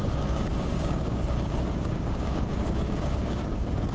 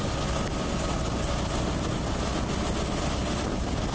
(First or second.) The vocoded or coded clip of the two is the first